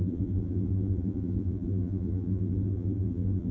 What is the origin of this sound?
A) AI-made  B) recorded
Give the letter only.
A